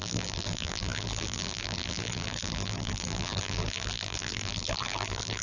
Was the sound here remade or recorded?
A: remade